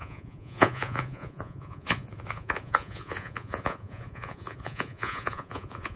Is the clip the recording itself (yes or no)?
no